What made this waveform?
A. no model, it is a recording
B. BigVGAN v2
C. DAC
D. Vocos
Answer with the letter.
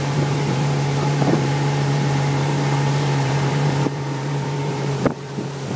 B